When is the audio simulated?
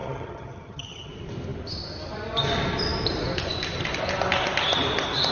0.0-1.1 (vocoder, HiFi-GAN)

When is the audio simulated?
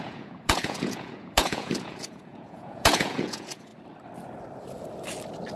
0.0-3.7 (vocoder, Vocos)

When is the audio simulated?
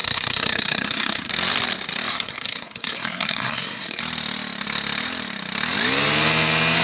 0.0-1.3 (codec, SNAC); 2.1-4.0